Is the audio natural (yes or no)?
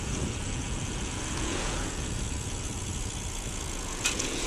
no